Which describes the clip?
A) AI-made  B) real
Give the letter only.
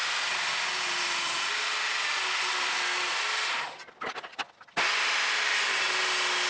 B